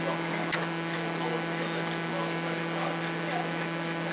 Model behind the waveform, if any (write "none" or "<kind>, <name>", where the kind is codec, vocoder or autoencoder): none